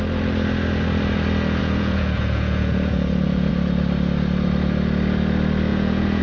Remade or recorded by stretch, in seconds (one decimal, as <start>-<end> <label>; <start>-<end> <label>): 0.0-1.6 recorded; 1.6-3.5 remade; 3.5-5.7 recorded; 5.7-6.2 remade